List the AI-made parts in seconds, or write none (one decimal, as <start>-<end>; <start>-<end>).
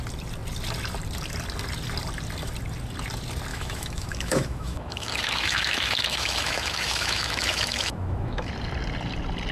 3.5-8.5